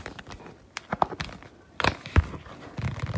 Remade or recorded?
recorded